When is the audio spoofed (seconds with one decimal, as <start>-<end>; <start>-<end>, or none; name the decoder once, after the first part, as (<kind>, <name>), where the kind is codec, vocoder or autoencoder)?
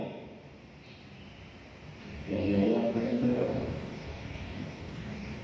2.0-5.4 (codec, DAC)